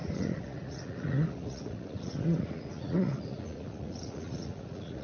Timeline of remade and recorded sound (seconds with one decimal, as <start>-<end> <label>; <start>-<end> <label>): 0.0-5.0 remade

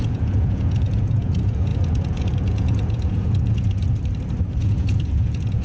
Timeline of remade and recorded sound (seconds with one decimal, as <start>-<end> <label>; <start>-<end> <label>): 0.0-3.8 remade; 3.8-4.6 recorded; 4.6-5.6 remade

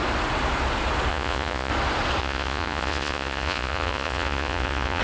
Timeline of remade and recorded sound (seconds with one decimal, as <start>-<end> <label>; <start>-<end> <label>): 0.0-1.1 recorded; 1.1-1.7 remade; 1.7-2.2 recorded; 2.2-5.0 remade

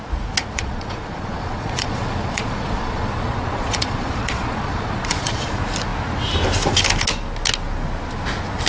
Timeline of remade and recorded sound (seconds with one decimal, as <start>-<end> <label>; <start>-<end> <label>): 0.0-0.4 recorded; 0.4-5.5 remade; 5.5-8.7 recorded

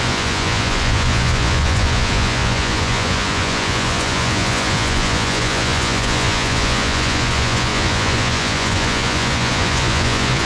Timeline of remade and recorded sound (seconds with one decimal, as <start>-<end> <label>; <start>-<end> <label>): 0.0-10.5 remade

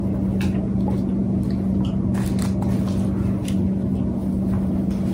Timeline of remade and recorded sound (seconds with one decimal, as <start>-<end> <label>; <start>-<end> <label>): 0.0-5.1 recorded

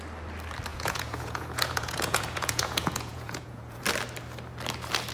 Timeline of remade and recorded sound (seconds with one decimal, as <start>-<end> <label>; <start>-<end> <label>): 0.0-0.7 recorded; 0.7-3.8 remade; 3.8-5.1 recorded